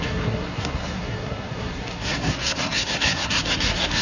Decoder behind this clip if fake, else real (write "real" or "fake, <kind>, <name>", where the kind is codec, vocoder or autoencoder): fake, codec, SNAC